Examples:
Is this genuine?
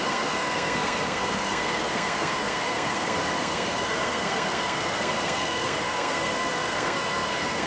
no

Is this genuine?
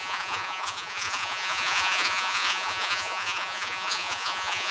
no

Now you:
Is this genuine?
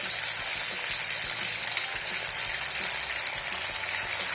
yes